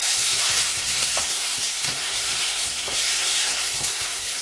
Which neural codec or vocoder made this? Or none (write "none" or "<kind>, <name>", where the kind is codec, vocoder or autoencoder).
codec, SNAC